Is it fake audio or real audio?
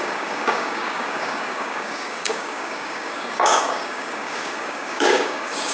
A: fake